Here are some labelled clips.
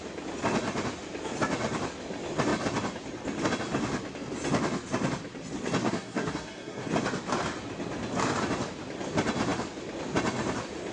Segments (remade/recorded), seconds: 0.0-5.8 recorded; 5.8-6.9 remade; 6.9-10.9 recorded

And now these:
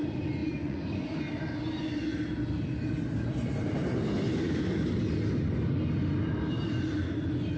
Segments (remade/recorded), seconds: 0.0-0.4 recorded; 0.4-1.2 remade; 1.2-7.6 recorded

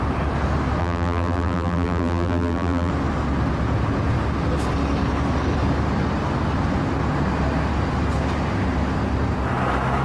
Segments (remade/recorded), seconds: 0.0-0.8 recorded; 0.8-2.9 remade; 2.9-10.0 recorded

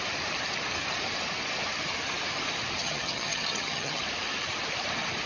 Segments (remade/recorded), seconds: 0.0-2.8 recorded; 2.8-4.0 remade; 4.0-5.3 recorded

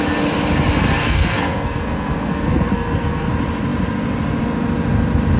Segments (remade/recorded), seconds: 0.0-1.0 recorded; 1.0-3.3 remade; 3.3-5.4 recorded

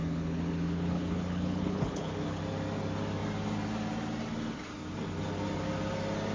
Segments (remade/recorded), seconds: 0.0-2.4 remade; 2.4-6.3 recorded

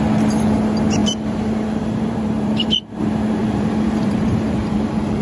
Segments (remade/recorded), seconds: 0.0-1.0 recorded; 1.0-3.0 remade; 3.0-3.4 recorded; 3.4-5.2 remade

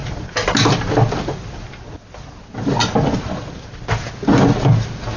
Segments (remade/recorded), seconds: 0.0-5.2 recorded